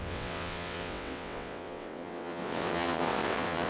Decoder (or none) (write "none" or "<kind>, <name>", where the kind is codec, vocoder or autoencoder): vocoder, WaveNeXt